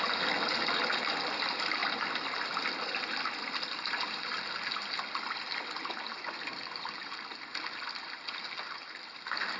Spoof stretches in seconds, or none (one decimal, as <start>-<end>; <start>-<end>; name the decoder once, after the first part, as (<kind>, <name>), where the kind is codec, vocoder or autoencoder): none

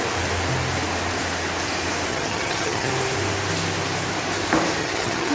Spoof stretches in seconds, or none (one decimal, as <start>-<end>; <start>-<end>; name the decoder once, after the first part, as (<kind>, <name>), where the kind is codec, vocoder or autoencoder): 2.1-2.9 (vocoder, HiFi-GAN); 4.8-5.3